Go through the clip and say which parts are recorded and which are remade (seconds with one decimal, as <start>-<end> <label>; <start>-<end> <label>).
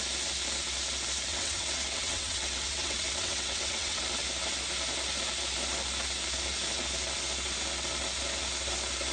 0.0-1.3 recorded; 1.3-4.0 remade; 4.0-9.1 recorded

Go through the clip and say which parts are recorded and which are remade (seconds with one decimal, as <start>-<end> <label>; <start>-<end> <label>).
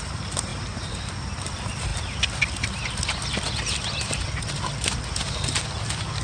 0.0-6.2 recorded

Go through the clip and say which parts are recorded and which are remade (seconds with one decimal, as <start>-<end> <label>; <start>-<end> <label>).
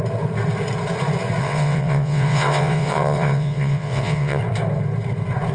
0.0-1.4 recorded; 1.4-4.4 remade; 4.4-5.5 recorded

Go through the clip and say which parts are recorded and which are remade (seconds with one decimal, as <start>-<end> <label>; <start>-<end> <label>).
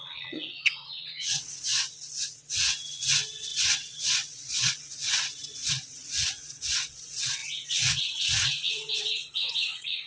0.0-1.7 remade; 1.7-2.3 recorded; 2.3-10.1 remade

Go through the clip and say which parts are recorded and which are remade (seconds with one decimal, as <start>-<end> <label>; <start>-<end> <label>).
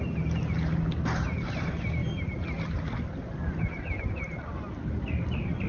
0.0-5.7 recorded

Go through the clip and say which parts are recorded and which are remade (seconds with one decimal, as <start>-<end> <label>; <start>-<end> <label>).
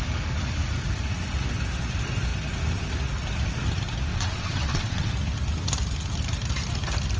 0.0-4.1 recorded; 4.1-5.1 remade; 5.1-7.2 recorded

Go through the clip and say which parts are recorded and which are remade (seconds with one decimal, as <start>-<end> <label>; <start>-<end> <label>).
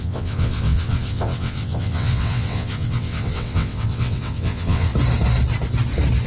0.0-4.9 remade; 4.9-6.3 recorded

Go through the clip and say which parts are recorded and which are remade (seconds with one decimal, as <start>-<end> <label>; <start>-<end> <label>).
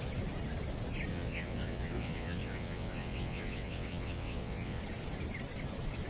0.0-1.1 recorded; 1.1-4.8 remade; 4.8-6.1 recorded